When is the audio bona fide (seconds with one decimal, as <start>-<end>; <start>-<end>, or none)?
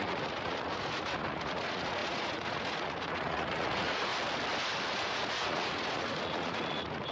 4.1-4.9